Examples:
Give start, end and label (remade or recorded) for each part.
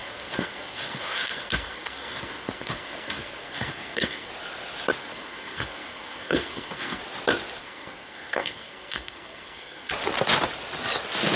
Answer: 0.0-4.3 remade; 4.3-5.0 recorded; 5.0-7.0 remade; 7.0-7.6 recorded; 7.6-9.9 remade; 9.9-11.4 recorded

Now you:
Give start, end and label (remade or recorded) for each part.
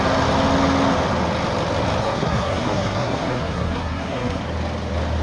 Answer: 0.0-2.0 recorded; 2.0-4.4 remade; 4.4-5.2 recorded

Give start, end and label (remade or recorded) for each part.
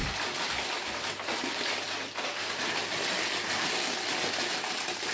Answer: 0.0-5.1 recorded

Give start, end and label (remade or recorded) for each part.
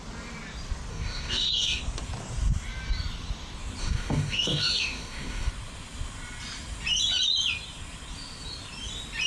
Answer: 0.0-0.9 recorded; 0.9-1.8 remade; 1.8-3.8 recorded; 3.8-5.5 remade; 5.5-9.3 recorded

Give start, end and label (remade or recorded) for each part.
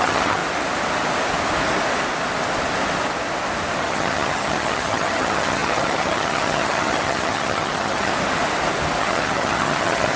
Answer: 0.0-0.4 remade; 0.4-3.8 recorded; 3.8-8.1 remade; 8.1-9.0 recorded; 9.0-10.2 remade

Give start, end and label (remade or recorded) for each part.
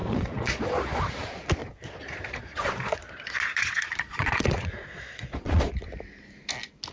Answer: 0.0-1.0 remade; 1.0-1.6 recorded; 1.6-5.7 remade; 5.7-6.9 recorded